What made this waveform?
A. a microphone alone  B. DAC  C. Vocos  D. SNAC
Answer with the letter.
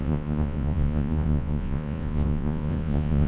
C